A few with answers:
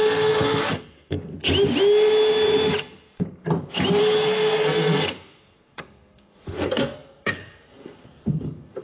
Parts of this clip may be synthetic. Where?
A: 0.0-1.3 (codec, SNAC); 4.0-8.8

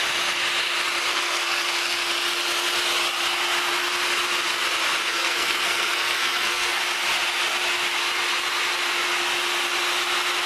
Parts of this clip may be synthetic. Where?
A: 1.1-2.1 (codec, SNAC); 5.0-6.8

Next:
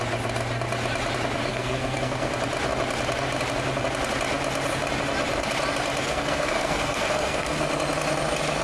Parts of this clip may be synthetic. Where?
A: 1.5-2.3 (codec, SNAC); 6.0-7.7

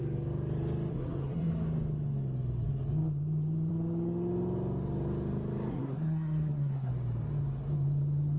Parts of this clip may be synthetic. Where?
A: 0.9-1.5 (codec, SNAC); 5.7-6.9

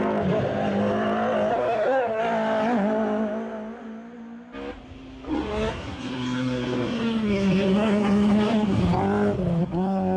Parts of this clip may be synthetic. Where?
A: 1.5-2.2 (codec, SNAC); 5.3-8.8; 9.6-10.2

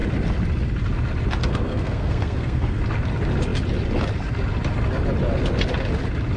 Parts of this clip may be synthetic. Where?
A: 1.4-2.8 (codec, SNAC)

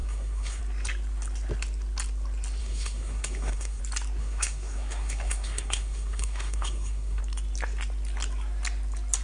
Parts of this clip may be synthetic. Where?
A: 0.0-0.6 (codec, SNAC); 2.6-3.8; 4.2-7.2

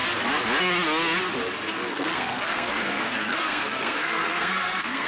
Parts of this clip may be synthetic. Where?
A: 1.9-5.1 (codec, SNAC)